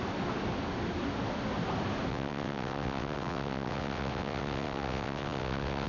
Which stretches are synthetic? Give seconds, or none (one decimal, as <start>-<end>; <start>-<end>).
2.1-5.9

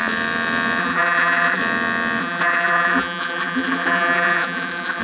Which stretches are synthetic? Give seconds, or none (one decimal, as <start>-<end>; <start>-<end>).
0.8-1.6; 2.2-5.0

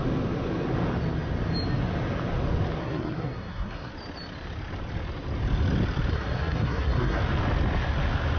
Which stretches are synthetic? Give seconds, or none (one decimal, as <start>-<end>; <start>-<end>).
2.8-3.9; 6.1-7.2